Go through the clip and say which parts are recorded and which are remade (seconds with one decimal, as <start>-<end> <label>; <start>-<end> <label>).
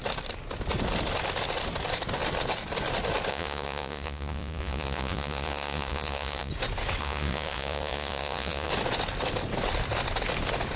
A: 0.0-3.3 recorded; 3.3-6.5 remade; 6.5-7.0 recorded; 7.0-8.7 remade; 8.7-10.8 recorded